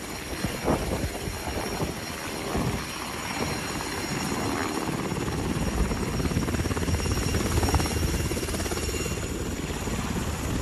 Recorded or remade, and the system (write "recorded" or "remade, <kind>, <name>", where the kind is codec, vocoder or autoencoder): recorded